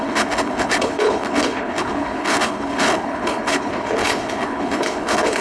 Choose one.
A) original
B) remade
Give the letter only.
B